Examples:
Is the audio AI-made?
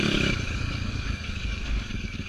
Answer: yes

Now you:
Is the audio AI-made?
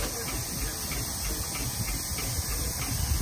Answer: no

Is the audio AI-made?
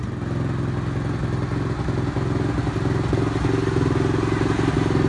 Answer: no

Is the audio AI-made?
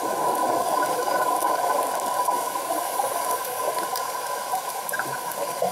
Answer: yes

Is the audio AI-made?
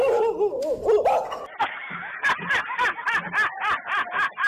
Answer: no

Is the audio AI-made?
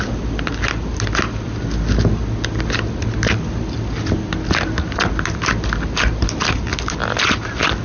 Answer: no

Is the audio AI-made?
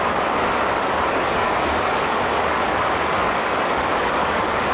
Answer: yes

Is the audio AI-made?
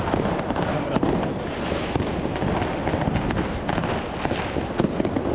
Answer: no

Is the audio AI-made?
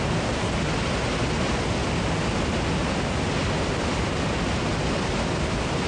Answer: no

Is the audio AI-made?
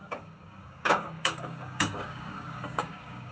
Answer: yes